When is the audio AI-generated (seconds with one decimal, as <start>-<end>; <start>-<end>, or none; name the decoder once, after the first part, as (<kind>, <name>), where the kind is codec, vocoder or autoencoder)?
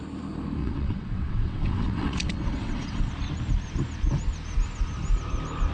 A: 0.6-3.1 (vocoder, WaveNeXt)